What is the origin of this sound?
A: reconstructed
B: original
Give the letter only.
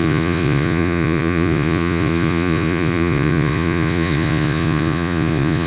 A